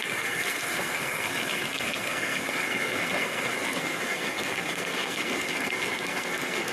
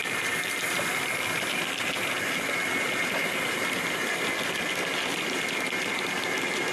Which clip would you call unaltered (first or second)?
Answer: second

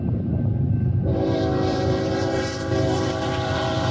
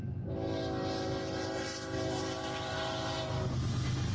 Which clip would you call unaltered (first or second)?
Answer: second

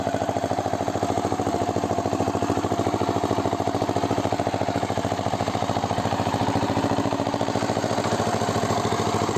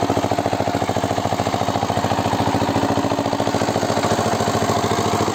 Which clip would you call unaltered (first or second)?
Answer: second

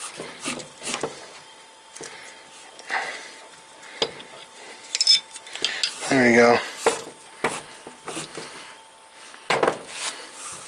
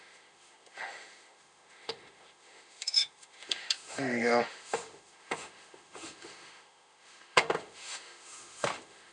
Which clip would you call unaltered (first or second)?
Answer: first